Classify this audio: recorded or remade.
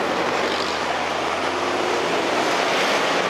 recorded